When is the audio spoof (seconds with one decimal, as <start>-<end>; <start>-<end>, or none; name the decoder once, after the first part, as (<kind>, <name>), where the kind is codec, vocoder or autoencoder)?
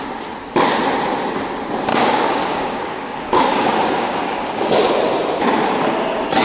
1.9-4.7 (codec, DAC)